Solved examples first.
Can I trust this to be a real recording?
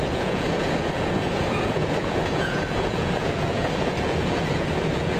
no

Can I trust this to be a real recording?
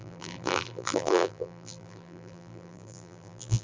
no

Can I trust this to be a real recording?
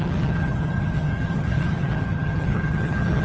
no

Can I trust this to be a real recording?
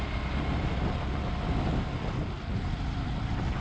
yes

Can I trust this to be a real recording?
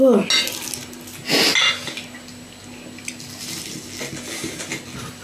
yes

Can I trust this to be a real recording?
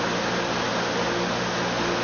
yes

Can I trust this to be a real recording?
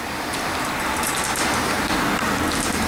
no